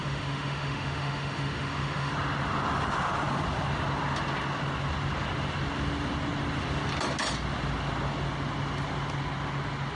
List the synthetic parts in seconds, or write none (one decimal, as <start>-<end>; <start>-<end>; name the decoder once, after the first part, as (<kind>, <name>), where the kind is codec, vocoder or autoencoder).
0.0-2.1 (autoencoder, DAC-VAE)